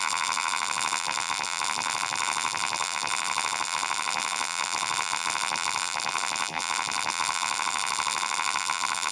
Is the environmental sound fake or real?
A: fake